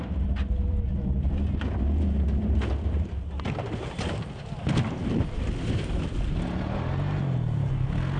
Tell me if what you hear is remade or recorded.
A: recorded